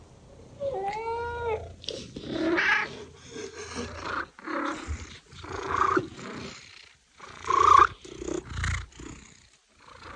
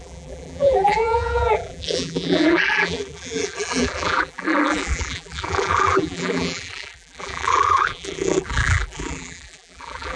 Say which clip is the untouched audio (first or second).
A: first